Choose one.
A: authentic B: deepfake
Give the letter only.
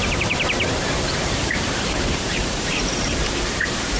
B